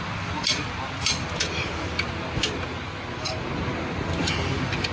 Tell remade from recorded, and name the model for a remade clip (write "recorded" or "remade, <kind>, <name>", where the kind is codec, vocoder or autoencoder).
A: recorded